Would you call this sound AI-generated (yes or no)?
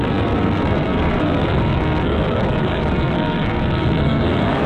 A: yes